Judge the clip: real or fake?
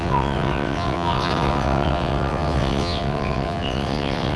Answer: fake